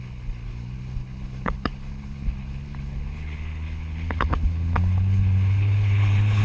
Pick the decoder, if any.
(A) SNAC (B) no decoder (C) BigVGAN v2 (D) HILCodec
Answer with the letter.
D